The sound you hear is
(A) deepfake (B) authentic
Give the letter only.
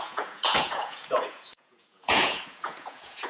A